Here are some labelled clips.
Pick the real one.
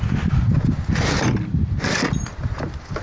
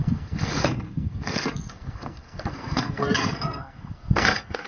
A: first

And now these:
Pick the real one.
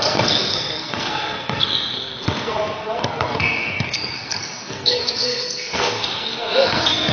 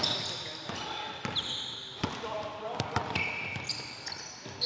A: second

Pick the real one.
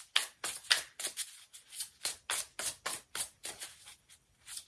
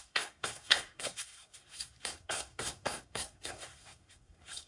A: first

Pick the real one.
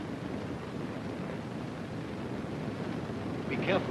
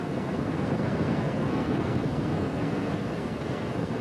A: first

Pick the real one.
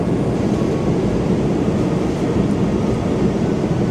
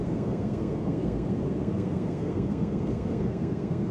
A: first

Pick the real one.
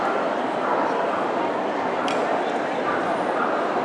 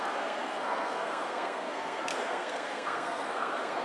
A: first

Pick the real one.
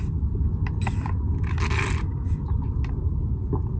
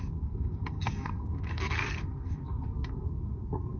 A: first